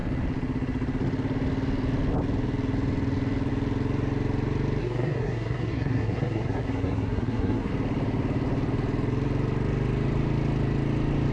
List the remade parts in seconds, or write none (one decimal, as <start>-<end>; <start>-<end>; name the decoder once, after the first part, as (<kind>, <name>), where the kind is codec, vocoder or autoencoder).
4.8-7.7 (codec, SNAC)

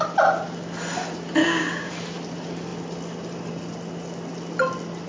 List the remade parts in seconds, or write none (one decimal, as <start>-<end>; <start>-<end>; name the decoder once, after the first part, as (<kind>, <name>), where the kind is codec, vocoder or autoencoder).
1.4-1.9 (codec, DAC)

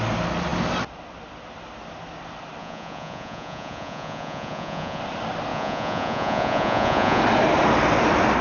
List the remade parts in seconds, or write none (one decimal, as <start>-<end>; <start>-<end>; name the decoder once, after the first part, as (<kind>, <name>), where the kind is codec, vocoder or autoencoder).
2.6-5.0 (vocoder, Vocos); 5.5-7.2

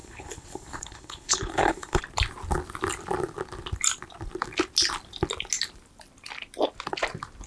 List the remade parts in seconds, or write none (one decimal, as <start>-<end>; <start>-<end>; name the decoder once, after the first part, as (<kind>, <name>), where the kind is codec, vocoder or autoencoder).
0.0-2.0 (codec, HILCodec)

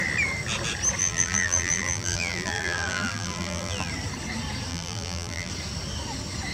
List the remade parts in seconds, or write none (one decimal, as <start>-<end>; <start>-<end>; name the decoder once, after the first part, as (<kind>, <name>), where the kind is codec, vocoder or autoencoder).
1.0-3.9 (vocoder, BigVGAN v2); 4.7-5.5

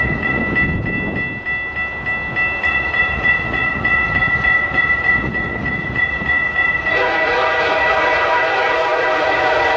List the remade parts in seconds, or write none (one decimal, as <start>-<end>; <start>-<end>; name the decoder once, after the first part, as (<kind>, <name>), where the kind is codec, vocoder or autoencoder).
0.0-0.4 (vocoder, Vocos); 2.6-9.8